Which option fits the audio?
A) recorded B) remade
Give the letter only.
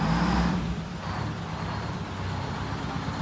A